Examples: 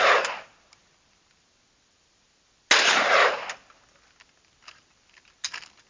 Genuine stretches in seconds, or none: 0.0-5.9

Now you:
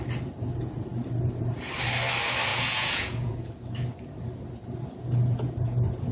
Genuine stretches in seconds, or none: 0.0-2.5; 3.5-6.1

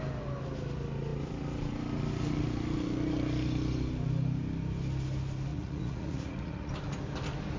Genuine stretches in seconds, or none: 0.0-5.5; 6.7-7.6

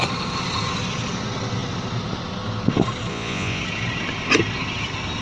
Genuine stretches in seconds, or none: 0.0-3.1; 3.6-5.2

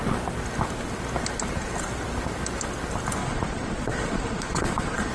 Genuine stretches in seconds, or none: 0.0-3.2

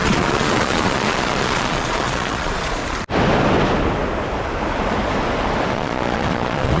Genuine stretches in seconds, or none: 2.8-5.7

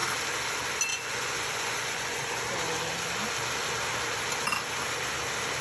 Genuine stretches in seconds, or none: 0.0-0.9; 2.4-5.6